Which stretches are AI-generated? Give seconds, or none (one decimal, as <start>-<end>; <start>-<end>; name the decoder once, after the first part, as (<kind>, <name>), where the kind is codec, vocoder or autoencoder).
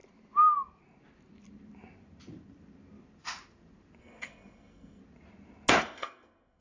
4.0-5.0 (codec, SNAC); 5.8-6.6